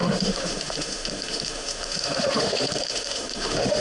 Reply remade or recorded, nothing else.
remade